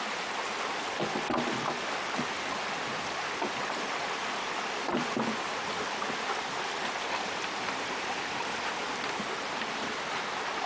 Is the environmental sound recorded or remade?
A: recorded